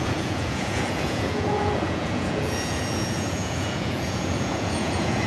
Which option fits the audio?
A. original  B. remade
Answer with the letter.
B